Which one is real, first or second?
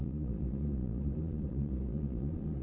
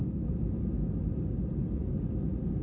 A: second